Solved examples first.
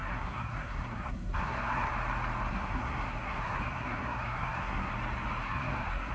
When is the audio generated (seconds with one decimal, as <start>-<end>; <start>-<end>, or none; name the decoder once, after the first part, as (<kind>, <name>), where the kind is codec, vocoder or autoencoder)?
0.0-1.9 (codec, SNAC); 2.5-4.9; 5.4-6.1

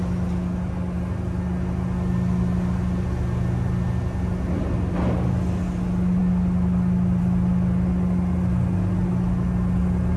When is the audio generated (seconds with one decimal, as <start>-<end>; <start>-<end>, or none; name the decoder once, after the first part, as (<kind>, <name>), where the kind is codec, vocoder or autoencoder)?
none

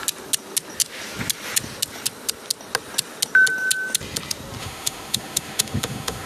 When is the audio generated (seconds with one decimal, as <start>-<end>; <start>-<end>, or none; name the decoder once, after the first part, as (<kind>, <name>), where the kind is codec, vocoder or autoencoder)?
4.6-6.3 (autoencoder, DAC-VAE)

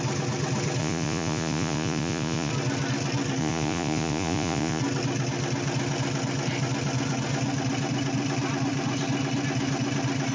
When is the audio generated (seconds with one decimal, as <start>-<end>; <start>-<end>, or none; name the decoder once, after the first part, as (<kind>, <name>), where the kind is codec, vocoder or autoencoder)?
0.8-2.5 (vocoder, Vocos); 3.4-4.8

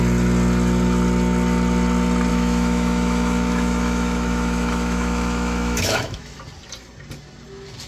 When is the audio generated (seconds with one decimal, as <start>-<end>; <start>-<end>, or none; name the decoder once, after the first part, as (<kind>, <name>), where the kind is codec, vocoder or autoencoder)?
2.3-6.4 (autoencoder, DAC-VAE)

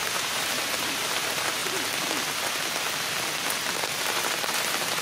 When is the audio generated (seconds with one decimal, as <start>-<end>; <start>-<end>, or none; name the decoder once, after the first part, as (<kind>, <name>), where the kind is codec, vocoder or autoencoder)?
0.0-1.6 (vocoder, BigVGAN v2); 4.1-5.0